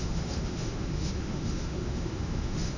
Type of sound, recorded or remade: remade